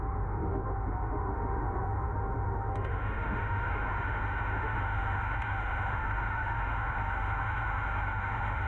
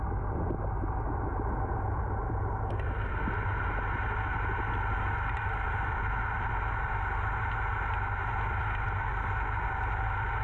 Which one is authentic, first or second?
second